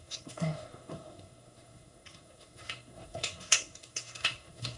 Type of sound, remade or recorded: remade